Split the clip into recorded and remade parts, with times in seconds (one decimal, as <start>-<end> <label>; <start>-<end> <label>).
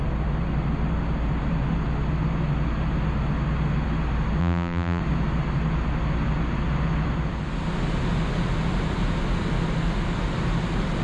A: 0.0-4.4 recorded; 4.4-5.0 remade; 5.0-11.0 recorded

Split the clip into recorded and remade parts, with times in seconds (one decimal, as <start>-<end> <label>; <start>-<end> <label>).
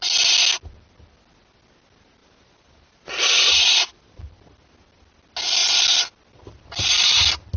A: 0.0-2.2 recorded; 2.2-4.2 remade; 4.2-7.6 recorded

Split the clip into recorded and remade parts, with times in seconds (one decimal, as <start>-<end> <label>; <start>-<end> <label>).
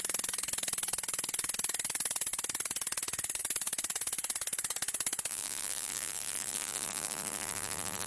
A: 0.0-5.3 recorded; 5.3-8.1 remade